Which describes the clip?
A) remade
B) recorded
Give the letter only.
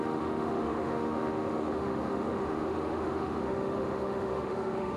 A